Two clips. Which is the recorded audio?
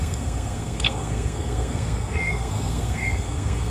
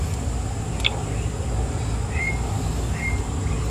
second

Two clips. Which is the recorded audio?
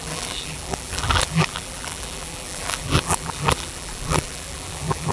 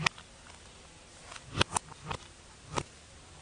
second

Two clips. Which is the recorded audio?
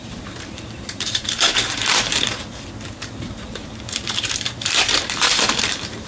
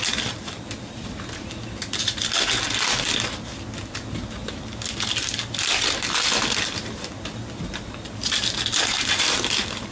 second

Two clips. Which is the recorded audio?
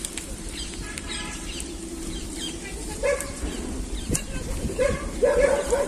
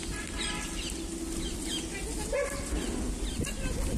second